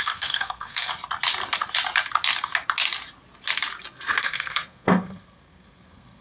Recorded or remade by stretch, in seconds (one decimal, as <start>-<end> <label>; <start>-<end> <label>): 0.0-0.9 remade; 0.9-4.2 recorded; 4.2-6.2 remade